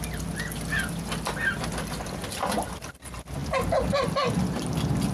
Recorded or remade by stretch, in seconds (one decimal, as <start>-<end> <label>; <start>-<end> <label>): 0.0-5.1 recorded